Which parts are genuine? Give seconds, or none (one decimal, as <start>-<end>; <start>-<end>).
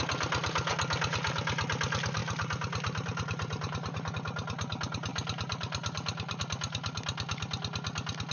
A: 0.0-2.2; 4.1-5.1; 6.4-8.3